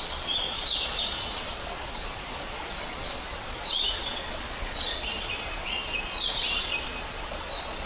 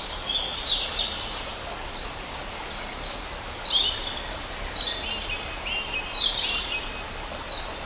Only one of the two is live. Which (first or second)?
second